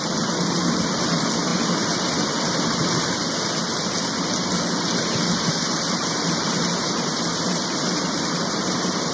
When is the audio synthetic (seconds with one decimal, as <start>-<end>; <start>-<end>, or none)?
0.0-1.5; 2.4-2.8; 7.1-9.1